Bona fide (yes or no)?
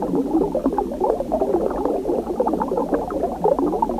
yes